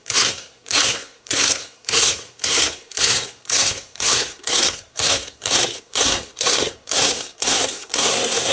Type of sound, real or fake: fake